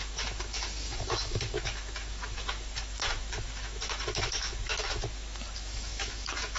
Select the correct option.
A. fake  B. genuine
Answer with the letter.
A